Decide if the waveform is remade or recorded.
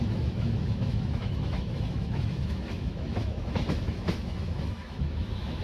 remade